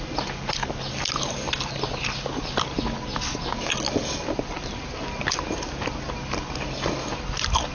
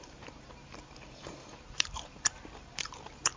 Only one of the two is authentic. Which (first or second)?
first